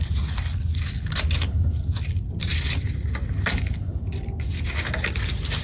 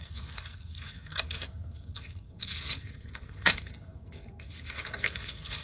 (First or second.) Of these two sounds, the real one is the first